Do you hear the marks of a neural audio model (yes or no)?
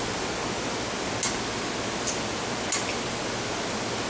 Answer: no